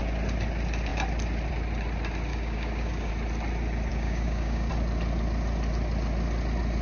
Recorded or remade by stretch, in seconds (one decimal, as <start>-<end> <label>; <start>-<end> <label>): 0.0-2.3 recorded; 2.3-3.1 remade; 3.1-3.9 recorded; 3.9-4.7 remade; 4.7-6.8 recorded